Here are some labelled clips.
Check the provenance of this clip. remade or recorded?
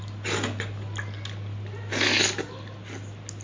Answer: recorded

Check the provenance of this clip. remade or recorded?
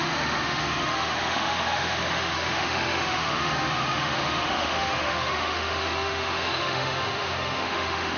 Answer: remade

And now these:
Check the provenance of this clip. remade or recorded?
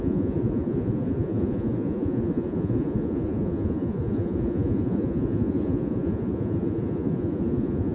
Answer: remade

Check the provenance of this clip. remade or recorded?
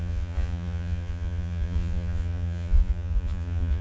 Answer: remade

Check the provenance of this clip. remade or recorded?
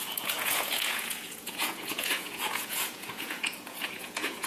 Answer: remade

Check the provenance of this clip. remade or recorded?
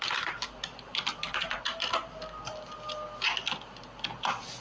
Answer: recorded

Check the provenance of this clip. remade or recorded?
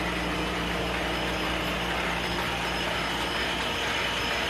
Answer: recorded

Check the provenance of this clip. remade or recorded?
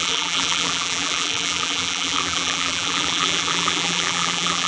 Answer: remade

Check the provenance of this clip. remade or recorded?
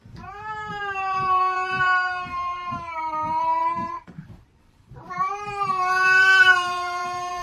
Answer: remade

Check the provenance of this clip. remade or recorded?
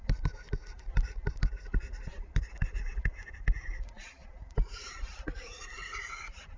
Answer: recorded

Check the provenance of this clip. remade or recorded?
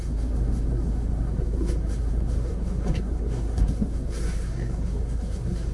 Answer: remade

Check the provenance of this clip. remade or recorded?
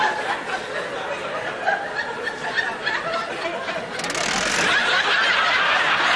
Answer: recorded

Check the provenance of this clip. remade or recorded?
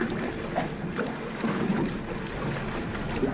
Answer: recorded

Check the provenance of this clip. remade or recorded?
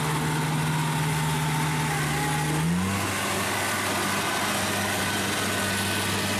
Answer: recorded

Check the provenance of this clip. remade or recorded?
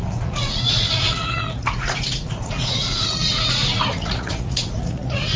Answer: remade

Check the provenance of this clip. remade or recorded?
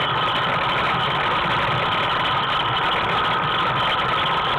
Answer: recorded